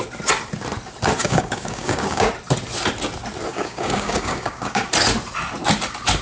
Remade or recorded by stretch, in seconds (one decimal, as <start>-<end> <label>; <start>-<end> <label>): 0.0-1.2 recorded; 1.2-2.3 remade; 2.3-3.5 recorded; 3.5-4.8 remade; 4.8-6.2 recorded